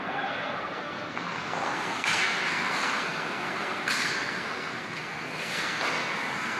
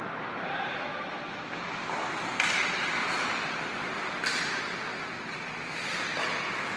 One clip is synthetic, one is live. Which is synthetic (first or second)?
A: first